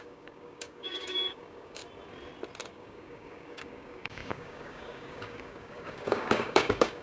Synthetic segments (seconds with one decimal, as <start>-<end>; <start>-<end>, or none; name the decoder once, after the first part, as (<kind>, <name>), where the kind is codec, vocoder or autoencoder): 0.0-1.8 (codec, DAC); 2.7-7.0

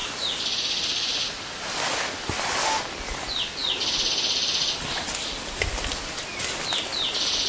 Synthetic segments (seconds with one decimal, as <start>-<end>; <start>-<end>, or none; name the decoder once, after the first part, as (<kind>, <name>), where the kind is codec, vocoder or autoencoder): none

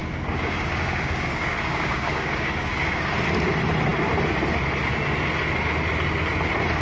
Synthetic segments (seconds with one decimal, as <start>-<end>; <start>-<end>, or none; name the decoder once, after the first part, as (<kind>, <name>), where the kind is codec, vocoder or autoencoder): 0.0-3.1 (codec, DAC)

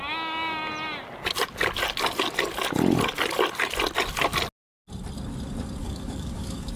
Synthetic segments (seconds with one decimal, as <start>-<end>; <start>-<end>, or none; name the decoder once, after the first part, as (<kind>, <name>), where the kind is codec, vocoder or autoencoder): 5.8-6.8 (codec, DAC)

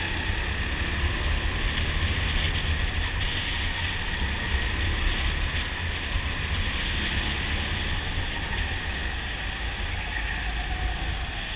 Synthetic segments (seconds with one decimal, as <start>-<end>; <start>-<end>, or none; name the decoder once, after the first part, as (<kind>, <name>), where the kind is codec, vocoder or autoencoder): none